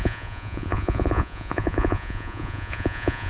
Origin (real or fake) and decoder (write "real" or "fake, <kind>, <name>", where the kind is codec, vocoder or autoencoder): fake, vocoder, Vocos